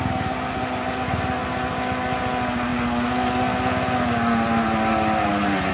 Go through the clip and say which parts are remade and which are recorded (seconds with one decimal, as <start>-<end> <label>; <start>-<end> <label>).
0.0-5.7 recorded